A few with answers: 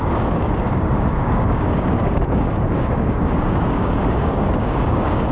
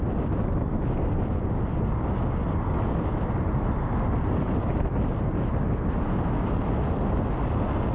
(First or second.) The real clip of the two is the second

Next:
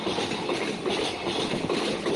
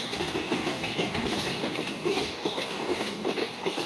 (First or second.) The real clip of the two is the first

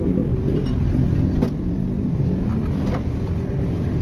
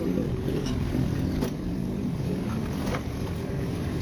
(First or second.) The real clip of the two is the first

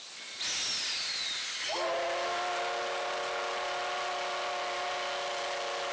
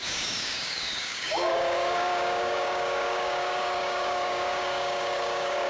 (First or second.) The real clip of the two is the first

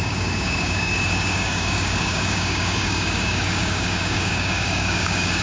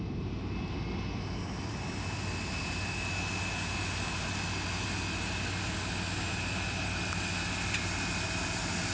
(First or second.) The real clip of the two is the second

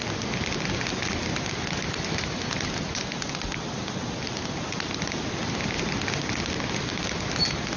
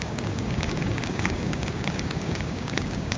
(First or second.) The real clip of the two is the first